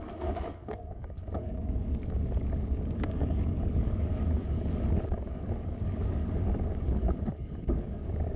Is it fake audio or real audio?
fake